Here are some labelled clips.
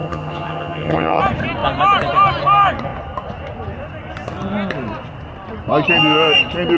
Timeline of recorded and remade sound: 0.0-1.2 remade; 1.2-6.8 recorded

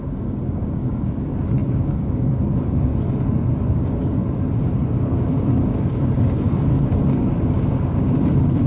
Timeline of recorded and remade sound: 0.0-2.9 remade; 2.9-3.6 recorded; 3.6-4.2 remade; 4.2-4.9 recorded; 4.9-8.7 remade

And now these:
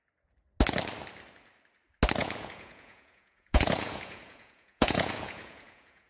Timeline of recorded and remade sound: 0.0-2.2 recorded; 2.2-6.1 remade

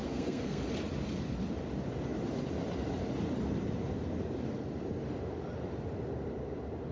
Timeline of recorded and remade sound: 0.0-0.6 remade; 0.6-6.9 recorded

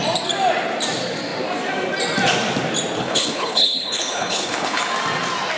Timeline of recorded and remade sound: 0.0-3.0 recorded; 3.0-4.8 remade; 4.8-5.6 recorded

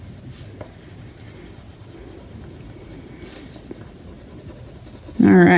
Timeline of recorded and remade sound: 0.0-5.6 recorded

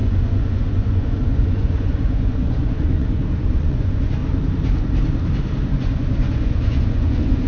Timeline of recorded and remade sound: 0.0-4.2 remade; 4.2-5.8 recorded; 5.8-7.5 remade

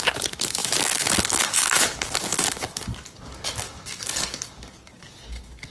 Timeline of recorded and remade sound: 0.0-5.7 remade